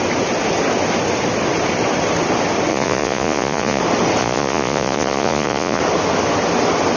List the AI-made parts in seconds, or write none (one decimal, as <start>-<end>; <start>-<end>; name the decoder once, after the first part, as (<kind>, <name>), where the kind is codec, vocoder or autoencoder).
2.7-3.8 (vocoder, Vocos); 4.2-5.8